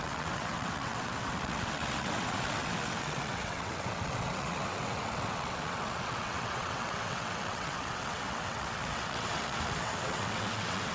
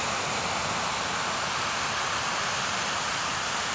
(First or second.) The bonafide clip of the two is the second